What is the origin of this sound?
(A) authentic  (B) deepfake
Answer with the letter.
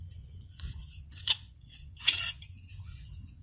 B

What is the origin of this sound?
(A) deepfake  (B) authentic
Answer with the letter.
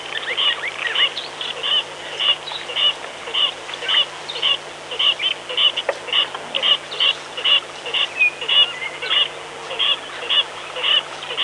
B